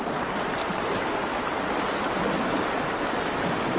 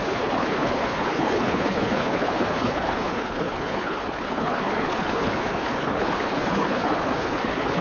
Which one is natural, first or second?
first